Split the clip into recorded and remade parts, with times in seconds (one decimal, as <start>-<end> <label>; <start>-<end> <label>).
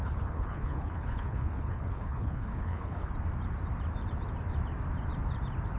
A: 0.0-3.1 remade; 3.1-5.8 recorded